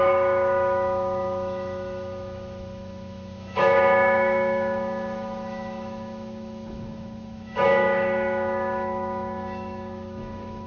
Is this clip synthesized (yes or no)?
yes